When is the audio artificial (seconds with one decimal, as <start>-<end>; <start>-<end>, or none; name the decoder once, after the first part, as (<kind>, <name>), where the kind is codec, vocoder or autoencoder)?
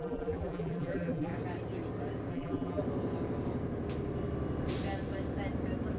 0.0-1.3 (vocoder, BigVGAN v2); 2.3-2.8